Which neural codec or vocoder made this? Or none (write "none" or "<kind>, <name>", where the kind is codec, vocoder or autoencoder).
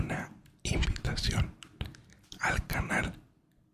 none